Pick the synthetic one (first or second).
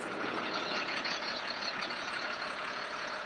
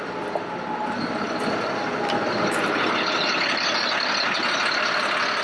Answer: first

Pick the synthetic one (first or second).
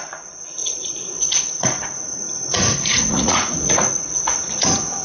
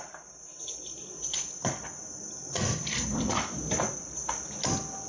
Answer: first